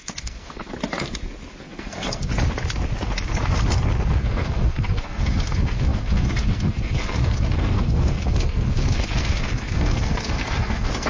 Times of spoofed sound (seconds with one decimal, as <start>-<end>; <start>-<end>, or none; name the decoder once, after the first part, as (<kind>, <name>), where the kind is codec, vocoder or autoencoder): 0.0-0.6 (codec, SNAC); 1.6-2.3; 4.2-11.1